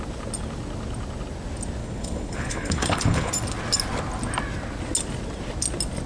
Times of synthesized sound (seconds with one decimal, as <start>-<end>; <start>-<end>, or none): 1.8-3.3